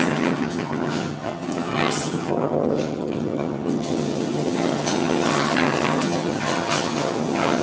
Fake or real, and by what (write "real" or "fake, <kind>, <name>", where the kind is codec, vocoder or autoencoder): fake, vocoder, HiFi-GAN